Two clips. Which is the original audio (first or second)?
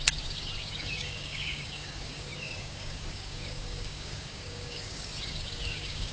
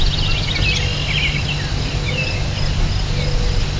second